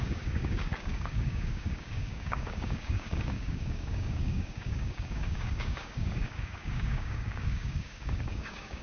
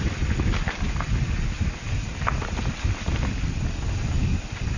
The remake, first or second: first